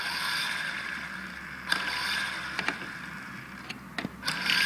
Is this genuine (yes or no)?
yes